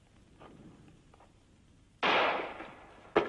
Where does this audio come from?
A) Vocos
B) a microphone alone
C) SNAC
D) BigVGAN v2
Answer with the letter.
B